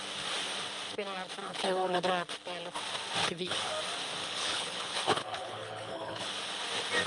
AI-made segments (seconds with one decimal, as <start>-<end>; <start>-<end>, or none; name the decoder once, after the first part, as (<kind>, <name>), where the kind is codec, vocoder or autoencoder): 1.4-2.0 (codec, HILCodec); 3.2-3.7; 4.2-6.3